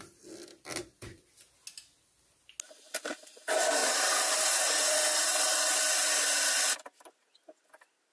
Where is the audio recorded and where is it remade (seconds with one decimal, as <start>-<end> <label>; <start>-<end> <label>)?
0.0-3.8 recorded; 3.8-6.5 remade; 6.5-8.1 recorded